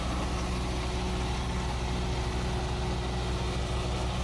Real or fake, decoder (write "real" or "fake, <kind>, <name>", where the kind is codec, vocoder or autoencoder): real